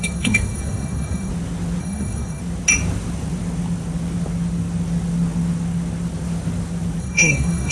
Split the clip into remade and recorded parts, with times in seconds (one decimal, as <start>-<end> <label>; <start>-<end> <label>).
0.0-1.3 remade; 1.3-1.8 recorded; 1.8-2.4 remade; 2.4-7.0 recorded; 7.0-7.7 remade